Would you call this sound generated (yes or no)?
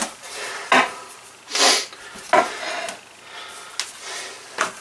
no